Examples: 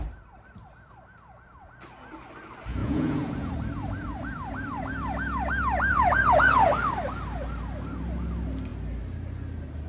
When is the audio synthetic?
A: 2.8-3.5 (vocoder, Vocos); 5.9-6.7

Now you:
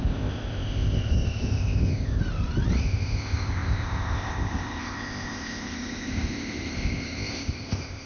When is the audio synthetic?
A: 0.0-2.2 (codec, ZipCodec); 2.8-8.1

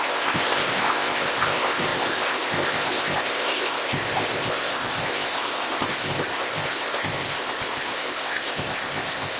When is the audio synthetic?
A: 0.0-9.4 (codec, ZipCodec)